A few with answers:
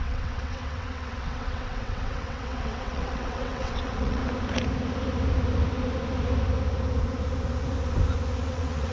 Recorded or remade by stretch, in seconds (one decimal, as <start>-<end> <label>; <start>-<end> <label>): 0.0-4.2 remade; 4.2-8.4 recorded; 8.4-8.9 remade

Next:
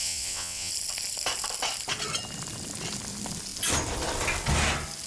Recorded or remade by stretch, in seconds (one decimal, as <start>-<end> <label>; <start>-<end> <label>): 0.0-0.7 remade; 0.7-5.1 recorded

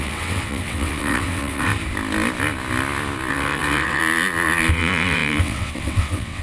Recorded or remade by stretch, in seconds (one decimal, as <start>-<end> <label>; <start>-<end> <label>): 0.0-1.7 remade; 1.7-3.3 recorded; 3.3-4.0 remade; 4.0-4.7 recorded; 4.7-6.4 remade

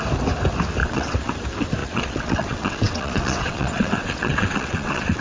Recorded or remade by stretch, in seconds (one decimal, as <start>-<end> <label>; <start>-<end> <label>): 0.0-0.8 recorded; 0.8-1.3 remade; 1.3-1.8 recorded; 1.8-5.2 remade

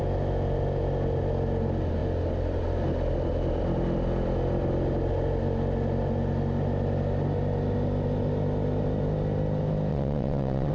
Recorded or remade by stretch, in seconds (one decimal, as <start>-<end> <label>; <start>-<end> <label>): 0.0-9.9 recorded; 9.9-10.7 remade

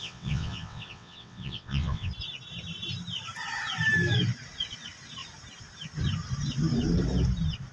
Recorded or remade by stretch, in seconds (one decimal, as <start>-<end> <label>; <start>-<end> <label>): 0.0-2.1 remade; 2.1-7.7 recorded

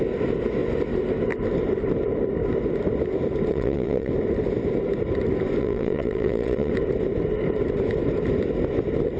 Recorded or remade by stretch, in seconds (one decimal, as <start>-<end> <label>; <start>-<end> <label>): 0.0-3.5 recorded; 3.5-4.1 remade; 4.1-5.6 recorded; 5.6-6.7 remade; 6.7-9.2 recorded

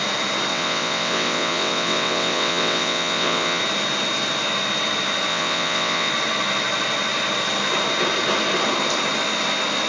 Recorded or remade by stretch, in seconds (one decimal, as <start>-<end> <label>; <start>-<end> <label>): 0.0-0.5 recorded; 0.5-3.6 remade; 3.6-5.3 recorded; 5.3-6.1 remade; 6.1-9.9 recorded